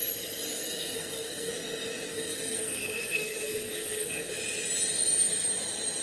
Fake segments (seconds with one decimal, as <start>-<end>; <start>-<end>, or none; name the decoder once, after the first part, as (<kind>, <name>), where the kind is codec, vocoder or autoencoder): 0.5-1.5 (codec, SNAC); 2.1-4.4

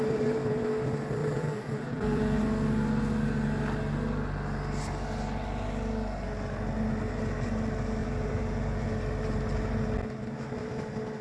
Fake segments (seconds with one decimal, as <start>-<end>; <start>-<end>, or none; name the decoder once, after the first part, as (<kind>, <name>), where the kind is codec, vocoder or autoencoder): 1.2-2.4 (vocoder, BigVGAN v2); 8.0-8.9

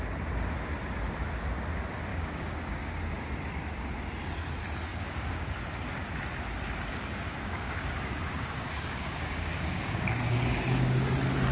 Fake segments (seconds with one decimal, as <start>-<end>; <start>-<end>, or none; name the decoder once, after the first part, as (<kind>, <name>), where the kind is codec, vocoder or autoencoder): 2.1-3.3 (codec, DAC); 4.9-5.5; 6.9-11.1

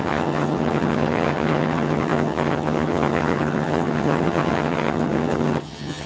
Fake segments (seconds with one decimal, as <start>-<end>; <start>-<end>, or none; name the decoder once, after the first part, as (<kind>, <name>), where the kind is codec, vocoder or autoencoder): 0.0-6.1 (vocoder, HiFi-GAN)